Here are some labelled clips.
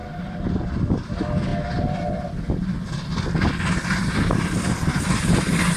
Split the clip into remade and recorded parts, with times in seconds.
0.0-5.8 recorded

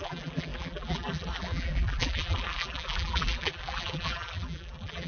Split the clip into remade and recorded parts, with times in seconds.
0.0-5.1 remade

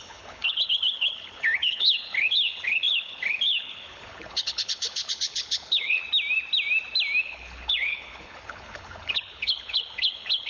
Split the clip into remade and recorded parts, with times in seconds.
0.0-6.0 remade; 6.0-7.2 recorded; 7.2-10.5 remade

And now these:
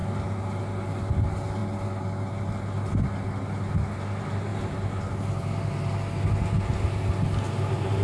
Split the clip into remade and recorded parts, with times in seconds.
0.0-8.0 recorded